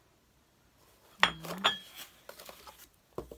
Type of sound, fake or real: real